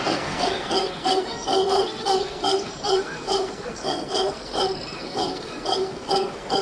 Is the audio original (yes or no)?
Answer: no